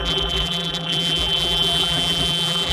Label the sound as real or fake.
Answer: fake